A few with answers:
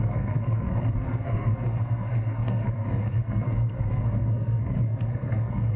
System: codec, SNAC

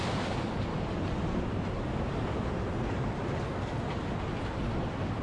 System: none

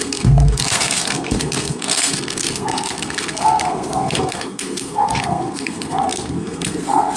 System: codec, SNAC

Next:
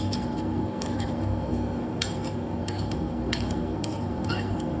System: codec, SNAC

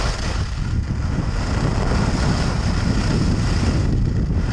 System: none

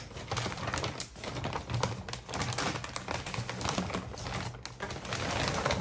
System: none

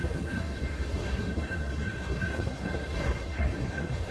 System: codec, SNAC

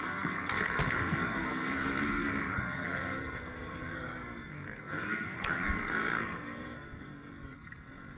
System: codec, SNAC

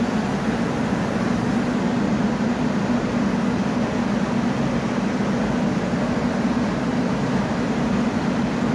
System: none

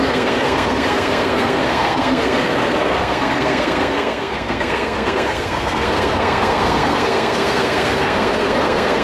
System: codec, SNAC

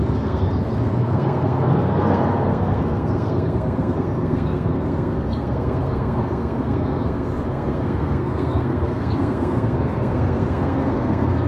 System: codec, SNAC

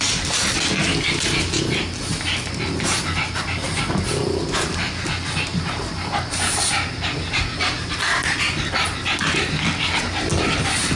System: none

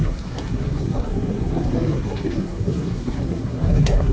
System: codec, SNAC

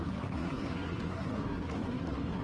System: codec, SNAC